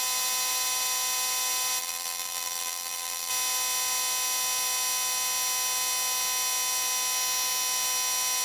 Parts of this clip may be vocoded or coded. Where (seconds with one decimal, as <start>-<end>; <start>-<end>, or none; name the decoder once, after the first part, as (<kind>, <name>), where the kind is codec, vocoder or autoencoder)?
1.8-3.3 (vocoder, BigVGAN v2)